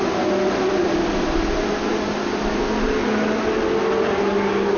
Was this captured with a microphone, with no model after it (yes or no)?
yes